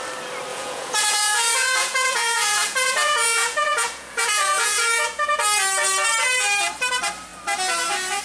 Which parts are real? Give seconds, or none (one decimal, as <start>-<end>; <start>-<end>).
0.0-0.5; 5.4-8.2